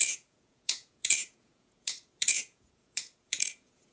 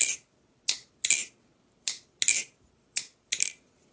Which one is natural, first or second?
second